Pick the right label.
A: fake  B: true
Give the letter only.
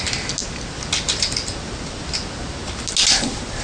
B